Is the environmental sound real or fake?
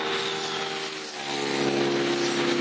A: real